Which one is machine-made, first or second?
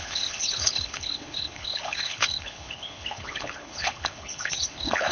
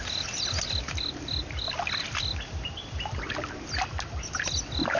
first